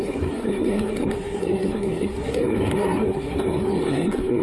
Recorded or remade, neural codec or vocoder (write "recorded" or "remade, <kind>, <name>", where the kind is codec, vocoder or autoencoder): remade, codec, SNAC